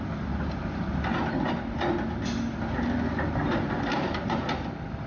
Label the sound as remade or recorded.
recorded